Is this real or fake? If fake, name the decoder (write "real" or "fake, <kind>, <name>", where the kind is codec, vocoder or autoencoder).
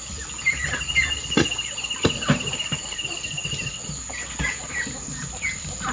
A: real